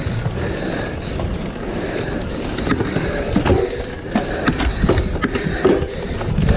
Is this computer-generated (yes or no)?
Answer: no